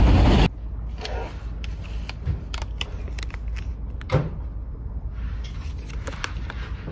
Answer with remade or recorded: recorded